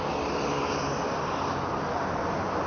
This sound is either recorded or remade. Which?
recorded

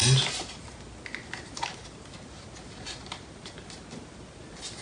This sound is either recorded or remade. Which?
recorded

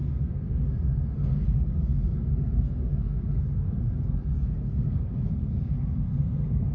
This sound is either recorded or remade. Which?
remade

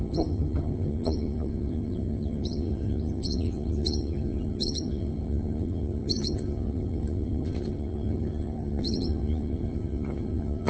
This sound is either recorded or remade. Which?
remade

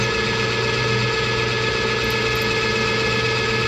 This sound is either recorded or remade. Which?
recorded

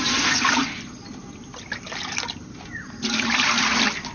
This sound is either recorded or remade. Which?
recorded